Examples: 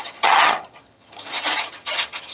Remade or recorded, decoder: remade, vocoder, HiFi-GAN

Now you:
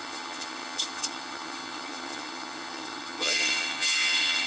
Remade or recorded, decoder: remade, vocoder, HiFi-GAN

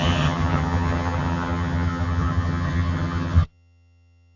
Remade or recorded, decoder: remade, vocoder, HiFi-GAN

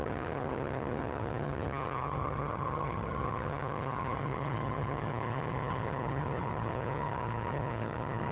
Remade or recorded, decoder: remade, vocoder, HiFi-GAN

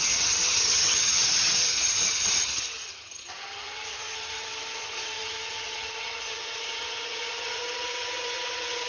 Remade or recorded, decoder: remade, vocoder, HiFi-GAN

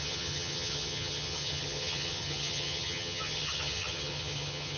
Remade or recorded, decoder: remade, vocoder, HiFi-GAN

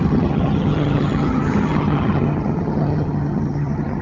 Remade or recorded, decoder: remade, vocoder, HiFi-GAN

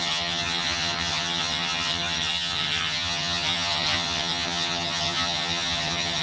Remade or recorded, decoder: remade, vocoder, HiFi-GAN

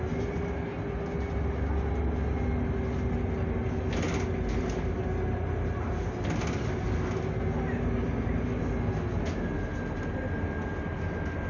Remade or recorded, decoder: recorded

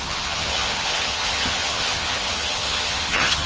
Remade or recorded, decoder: remade, vocoder, HiFi-GAN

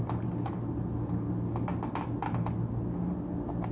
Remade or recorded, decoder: recorded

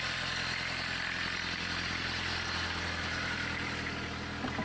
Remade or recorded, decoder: recorded